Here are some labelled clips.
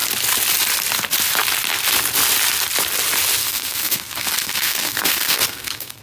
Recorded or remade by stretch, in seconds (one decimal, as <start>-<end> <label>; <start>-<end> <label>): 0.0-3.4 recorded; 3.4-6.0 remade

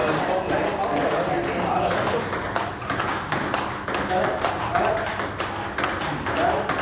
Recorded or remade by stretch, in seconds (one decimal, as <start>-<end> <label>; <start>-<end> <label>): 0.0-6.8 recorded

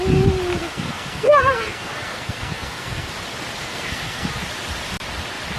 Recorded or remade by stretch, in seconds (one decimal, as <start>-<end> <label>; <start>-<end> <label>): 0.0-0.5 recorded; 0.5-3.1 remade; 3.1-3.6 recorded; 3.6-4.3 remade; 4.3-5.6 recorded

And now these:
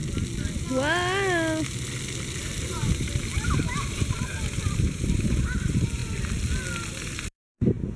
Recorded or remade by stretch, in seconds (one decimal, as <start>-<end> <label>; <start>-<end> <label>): 0.0-2.4 recorded; 2.4-6.0 remade; 6.0-6.9 recorded; 6.9-8.0 remade